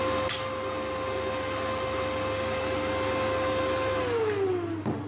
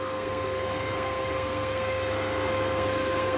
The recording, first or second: first